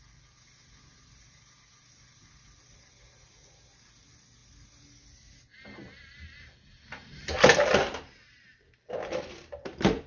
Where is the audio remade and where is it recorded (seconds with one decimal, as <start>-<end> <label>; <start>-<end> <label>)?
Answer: 0.0-10.1 recorded